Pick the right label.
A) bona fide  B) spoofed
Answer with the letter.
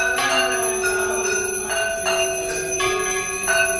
A